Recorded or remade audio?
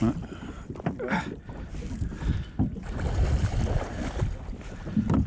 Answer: recorded